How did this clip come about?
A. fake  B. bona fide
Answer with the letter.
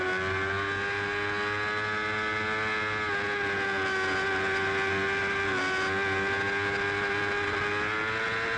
B